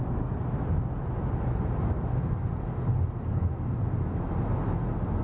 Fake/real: real